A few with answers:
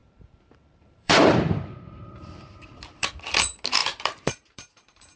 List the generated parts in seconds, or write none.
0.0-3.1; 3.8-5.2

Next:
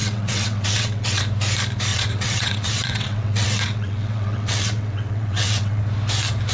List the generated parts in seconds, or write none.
0.0-1.2; 1.9-5.8

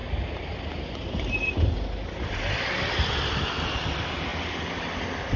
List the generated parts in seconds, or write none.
none

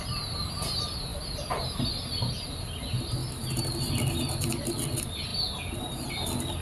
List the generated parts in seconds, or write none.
1.1-1.9; 3.2-4.7

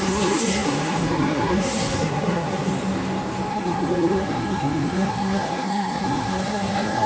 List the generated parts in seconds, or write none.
0.0-2.7; 3.5-7.1

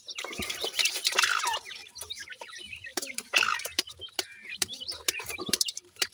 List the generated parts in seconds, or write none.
0.0-6.1

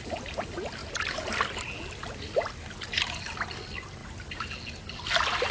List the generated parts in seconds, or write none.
none